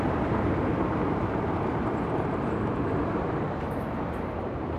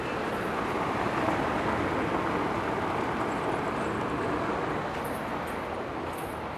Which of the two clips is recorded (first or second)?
second